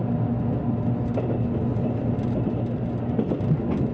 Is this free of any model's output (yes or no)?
yes